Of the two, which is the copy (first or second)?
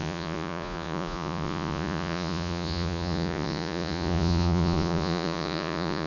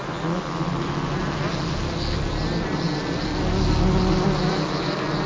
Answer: first